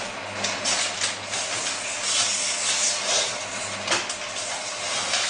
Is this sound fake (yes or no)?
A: no